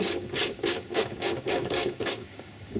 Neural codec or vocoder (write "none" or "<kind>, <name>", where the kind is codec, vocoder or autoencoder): codec, DAC